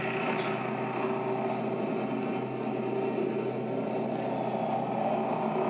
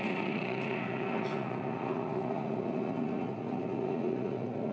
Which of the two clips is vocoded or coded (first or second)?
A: second